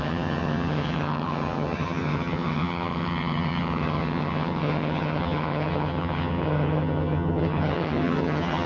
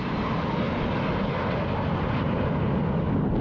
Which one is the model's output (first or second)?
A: first